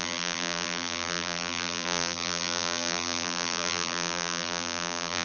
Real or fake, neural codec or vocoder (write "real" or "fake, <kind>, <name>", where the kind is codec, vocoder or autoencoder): fake, vocoder, BigVGAN v2